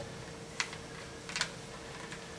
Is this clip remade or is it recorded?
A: recorded